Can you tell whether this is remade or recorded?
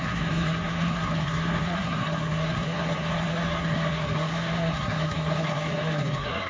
remade